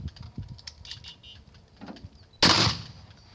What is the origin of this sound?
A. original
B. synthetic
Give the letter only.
A